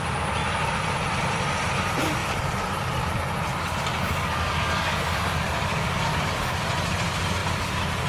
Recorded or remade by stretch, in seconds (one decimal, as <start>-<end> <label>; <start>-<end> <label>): 0.0-3.9 recorded; 3.9-6.5 remade; 6.5-8.1 recorded